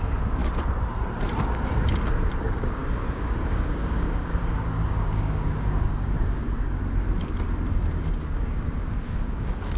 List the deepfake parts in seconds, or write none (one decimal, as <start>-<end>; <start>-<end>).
0.0-0.4; 2.4-6.8; 7.7-9.8